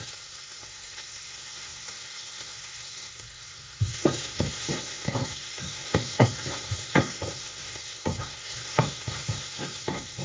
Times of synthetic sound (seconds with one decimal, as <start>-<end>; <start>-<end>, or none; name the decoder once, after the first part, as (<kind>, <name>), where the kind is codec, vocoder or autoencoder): 0.0-10.2 (codec, SNAC)